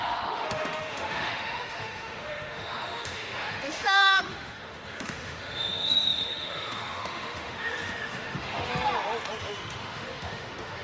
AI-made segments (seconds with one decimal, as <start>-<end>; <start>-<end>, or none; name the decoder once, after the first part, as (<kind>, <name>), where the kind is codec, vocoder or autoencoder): 0.0-8.7 (autoencoder, DAC-VAE); 9.4-10.8